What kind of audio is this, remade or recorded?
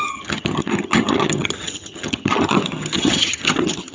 remade